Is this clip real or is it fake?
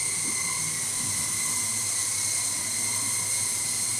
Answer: real